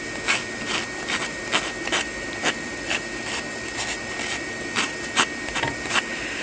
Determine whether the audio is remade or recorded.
recorded